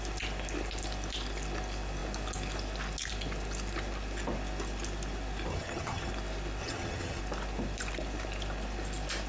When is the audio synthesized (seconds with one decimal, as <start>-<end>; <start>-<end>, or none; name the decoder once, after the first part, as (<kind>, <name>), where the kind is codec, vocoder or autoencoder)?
5.5-6.1 (vocoder, HiFi-GAN); 6.6-7.2